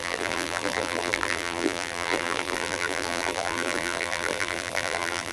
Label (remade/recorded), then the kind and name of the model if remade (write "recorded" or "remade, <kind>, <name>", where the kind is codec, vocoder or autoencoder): remade, vocoder, BigVGAN v2